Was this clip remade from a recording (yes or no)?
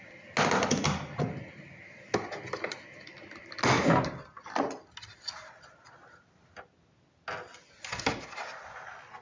no